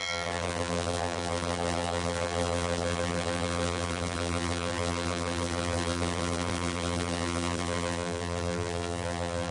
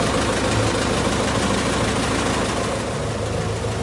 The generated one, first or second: first